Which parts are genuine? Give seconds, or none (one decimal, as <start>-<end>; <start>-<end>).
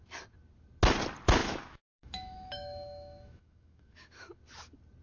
0.0-1.4; 4.4-5.0